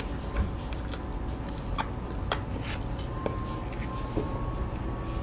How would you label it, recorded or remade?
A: recorded